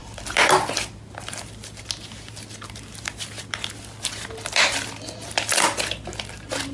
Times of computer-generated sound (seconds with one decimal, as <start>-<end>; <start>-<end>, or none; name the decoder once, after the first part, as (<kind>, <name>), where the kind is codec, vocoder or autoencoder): none